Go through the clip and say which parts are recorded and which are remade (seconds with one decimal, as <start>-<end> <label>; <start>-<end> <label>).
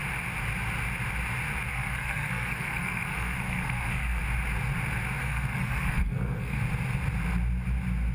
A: 0.0-1.7 recorded; 1.7-4.2 remade; 4.2-5.2 recorded; 5.2-6.6 remade; 6.6-8.1 recorded